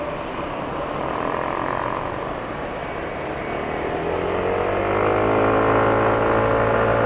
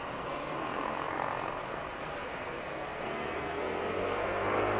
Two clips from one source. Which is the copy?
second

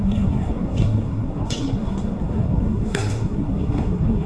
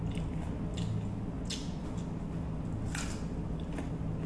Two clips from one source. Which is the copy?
first